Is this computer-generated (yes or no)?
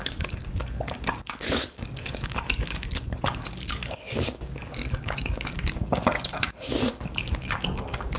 yes